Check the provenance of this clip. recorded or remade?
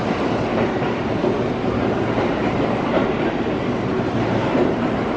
remade